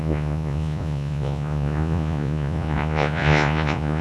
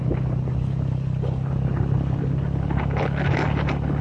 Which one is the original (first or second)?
second